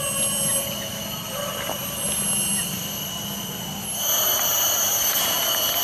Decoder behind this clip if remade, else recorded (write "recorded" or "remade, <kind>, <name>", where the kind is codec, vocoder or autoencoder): recorded